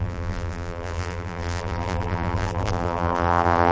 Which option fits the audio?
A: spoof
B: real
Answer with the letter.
A